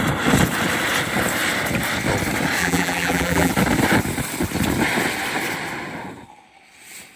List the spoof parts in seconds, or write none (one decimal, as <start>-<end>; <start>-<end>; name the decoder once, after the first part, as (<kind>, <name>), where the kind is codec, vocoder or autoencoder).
2.6-3.5 (vocoder, BigVGAN v2)